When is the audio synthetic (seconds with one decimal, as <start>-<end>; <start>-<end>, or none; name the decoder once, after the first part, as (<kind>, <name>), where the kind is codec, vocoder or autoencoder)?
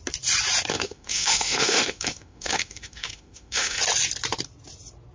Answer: 0.7-3.8 (autoencoder, DAC-VAE)